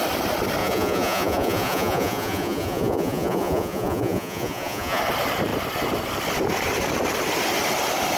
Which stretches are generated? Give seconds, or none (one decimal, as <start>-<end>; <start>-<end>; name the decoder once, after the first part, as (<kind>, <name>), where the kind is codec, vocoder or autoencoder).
0.6-5.0 (vocoder, Vocos)